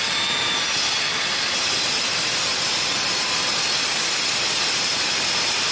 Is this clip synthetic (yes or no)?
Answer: no